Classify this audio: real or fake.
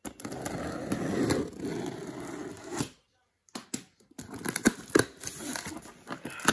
real